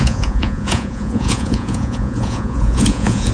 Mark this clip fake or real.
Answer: fake